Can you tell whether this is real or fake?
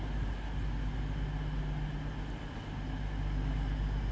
real